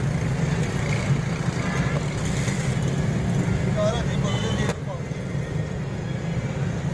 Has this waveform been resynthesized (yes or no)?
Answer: no